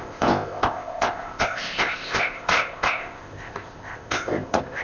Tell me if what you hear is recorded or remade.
remade